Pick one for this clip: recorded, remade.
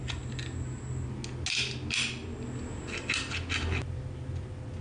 recorded